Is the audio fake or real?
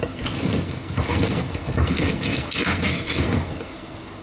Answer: fake